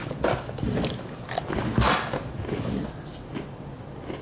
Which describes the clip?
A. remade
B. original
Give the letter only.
B